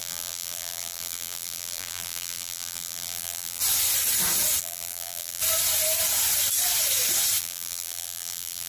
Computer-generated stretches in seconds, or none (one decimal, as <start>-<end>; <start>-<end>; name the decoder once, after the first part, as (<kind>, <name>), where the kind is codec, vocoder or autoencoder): 0.0-3.6 (vocoder, BigVGAN v2); 4.6-5.4; 7.4-8.7